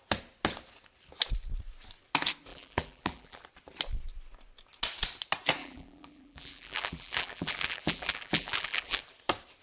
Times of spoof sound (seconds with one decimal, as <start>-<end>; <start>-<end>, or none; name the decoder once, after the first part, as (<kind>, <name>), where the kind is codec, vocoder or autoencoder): 2.5-3.4 (vocoder, BigVGAN v2); 5.6-9.0